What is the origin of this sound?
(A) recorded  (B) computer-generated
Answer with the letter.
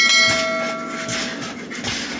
A